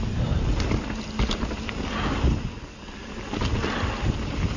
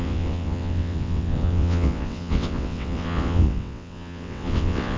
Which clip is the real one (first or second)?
first